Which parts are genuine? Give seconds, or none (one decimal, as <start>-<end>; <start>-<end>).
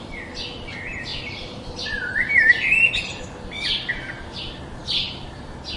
0.0-1.1; 3.2-5.8